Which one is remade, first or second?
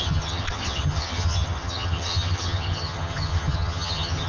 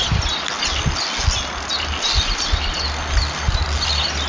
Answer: first